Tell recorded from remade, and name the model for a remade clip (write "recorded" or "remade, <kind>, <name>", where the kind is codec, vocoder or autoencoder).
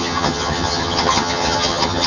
remade, vocoder, HiFi-GAN